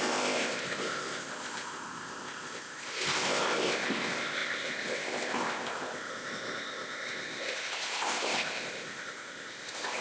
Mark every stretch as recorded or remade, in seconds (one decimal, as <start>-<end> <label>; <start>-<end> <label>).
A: 0.0-10.0 remade